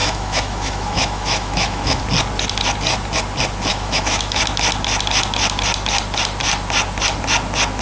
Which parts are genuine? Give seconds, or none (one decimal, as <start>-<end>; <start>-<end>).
2.0-3.7; 4.4-7.8